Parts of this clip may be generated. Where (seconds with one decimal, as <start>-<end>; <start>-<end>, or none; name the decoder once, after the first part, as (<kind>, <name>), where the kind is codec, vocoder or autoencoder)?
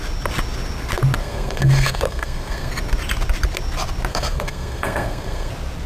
1.2-2.7 (codec, SNAC); 4.1-5.5